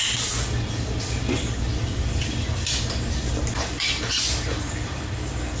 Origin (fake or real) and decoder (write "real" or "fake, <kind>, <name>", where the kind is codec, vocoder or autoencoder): real